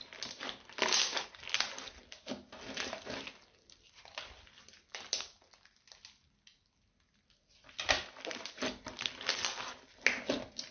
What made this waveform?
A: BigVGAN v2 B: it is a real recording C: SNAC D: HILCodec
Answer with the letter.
B